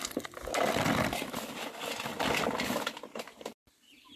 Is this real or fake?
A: real